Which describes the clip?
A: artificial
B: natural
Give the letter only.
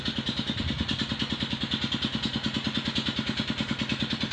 B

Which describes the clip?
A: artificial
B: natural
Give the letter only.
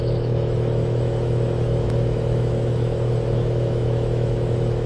A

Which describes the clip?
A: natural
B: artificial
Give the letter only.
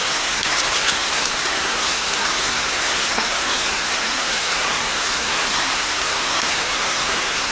B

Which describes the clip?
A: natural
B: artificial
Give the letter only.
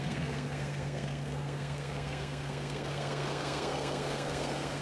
B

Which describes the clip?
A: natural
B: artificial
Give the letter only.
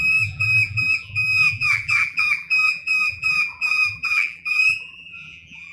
B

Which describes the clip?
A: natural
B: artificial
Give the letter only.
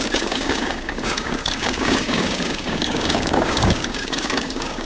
B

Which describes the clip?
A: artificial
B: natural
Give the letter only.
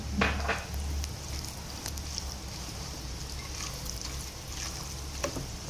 B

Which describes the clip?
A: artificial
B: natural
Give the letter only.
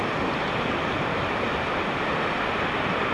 B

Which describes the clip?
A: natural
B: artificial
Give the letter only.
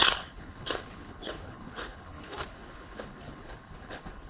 B